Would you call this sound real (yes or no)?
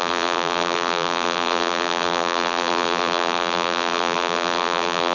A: no